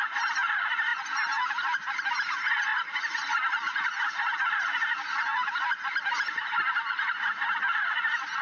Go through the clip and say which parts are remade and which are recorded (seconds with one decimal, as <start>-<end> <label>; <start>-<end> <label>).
0.0-2.7 recorded; 2.7-5.2 remade; 5.2-8.4 recorded